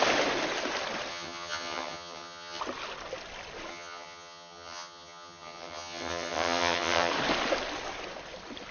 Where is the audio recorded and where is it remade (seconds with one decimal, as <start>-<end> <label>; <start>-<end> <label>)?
0.0-1.1 recorded; 1.1-2.6 remade; 2.6-3.7 recorded; 3.7-7.1 remade; 7.1-8.7 recorded